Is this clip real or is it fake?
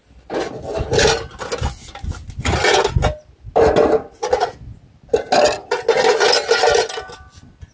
real